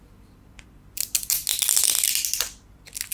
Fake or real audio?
real